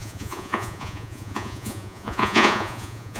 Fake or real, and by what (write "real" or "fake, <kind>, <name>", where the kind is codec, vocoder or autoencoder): fake, vocoder, Vocos